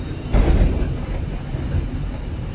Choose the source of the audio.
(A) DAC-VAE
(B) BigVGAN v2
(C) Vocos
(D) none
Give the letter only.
D